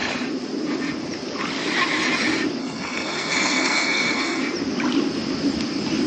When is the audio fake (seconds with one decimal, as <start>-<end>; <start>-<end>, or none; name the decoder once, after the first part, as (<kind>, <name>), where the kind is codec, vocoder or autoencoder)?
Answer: 2.6-4.4 (codec, SNAC)